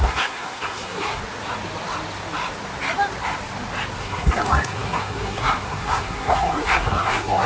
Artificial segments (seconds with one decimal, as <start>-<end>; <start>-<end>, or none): 0.0-1.2; 4.0-7.5